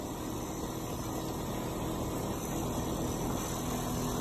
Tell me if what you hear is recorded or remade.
recorded